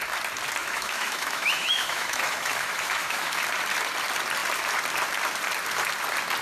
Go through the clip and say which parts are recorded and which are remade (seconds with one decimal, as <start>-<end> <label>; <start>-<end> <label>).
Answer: 0.0-0.6 recorded; 0.6-3.4 remade; 3.4-6.4 recorded